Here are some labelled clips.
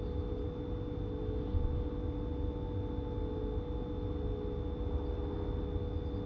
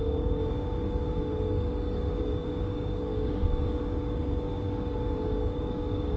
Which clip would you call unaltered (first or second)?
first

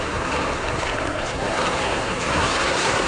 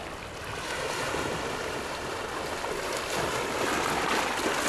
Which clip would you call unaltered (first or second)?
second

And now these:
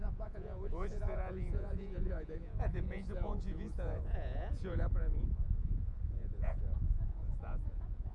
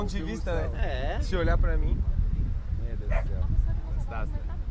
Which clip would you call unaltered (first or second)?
second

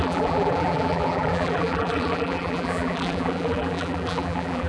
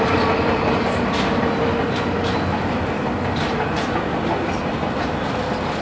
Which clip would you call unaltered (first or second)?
second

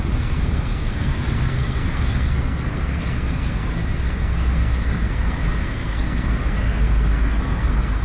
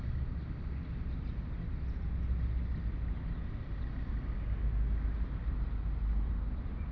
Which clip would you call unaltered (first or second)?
second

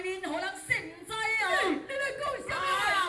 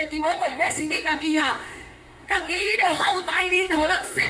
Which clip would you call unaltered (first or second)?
first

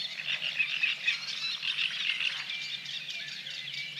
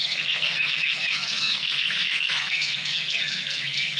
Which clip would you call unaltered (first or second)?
first